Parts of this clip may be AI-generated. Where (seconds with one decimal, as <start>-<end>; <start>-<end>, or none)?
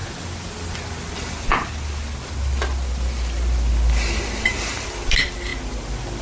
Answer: none